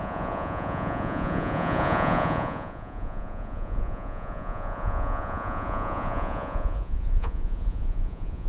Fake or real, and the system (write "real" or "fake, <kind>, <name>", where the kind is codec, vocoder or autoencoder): fake, vocoder, Vocos